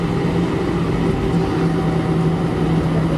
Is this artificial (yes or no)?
no